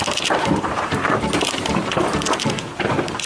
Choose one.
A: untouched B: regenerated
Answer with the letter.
B